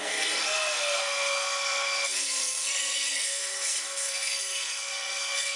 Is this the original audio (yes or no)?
no